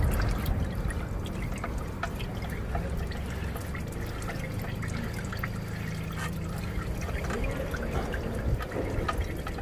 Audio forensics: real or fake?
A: real